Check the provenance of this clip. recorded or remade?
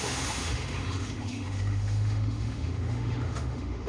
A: remade